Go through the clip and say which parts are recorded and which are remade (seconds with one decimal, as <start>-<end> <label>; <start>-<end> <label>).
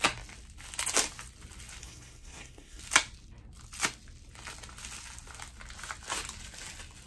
0.0-1.8 recorded; 1.8-2.8 remade; 2.8-7.1 recorded